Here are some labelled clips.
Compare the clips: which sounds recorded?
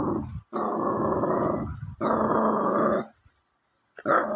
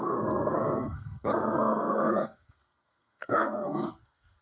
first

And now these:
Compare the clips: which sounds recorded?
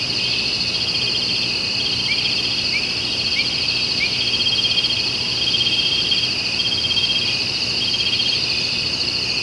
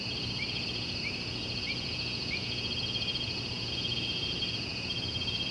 first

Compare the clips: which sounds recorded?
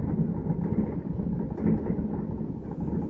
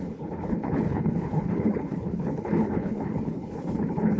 first